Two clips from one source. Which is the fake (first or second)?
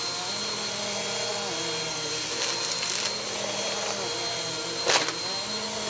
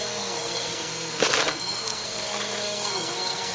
second